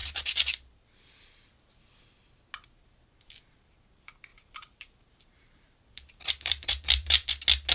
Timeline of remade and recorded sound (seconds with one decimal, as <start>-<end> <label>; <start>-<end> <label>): 0.0-1.8 remade; 1.8-4.3 recorded; 4.3-7.3 remade; 7.3-7.7 recorded